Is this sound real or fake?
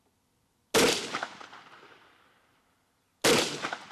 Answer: real